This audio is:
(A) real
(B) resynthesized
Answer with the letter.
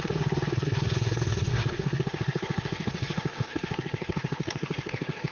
B